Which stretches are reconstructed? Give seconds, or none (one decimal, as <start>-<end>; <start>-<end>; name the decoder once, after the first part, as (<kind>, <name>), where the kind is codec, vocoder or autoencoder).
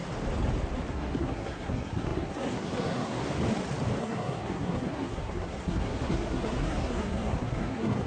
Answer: 0.9-3.2 (codec, SNAC); 4.0-8.1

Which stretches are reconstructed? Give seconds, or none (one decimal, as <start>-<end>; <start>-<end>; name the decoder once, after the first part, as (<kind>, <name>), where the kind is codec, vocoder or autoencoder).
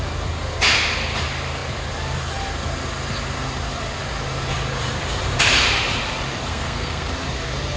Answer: 6.5-7.1 (codec, SNAC)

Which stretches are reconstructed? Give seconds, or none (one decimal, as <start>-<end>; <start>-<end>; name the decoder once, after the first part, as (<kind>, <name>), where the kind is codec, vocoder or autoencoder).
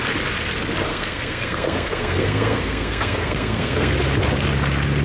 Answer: 0.9-3.9 (codec, SNAC)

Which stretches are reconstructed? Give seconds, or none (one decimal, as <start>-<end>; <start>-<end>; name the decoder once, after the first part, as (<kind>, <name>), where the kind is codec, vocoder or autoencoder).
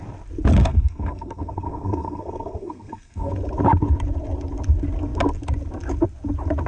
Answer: 0.6-3.3 (codec, SNAC)